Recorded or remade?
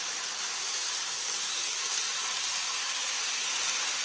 recorded